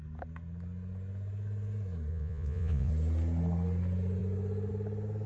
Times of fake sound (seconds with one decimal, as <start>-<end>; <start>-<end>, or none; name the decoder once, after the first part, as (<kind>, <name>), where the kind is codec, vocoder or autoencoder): 2.1-2.9 (vocoder, Vocos)